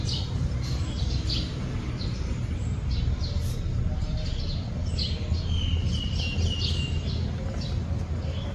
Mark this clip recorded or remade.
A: recorded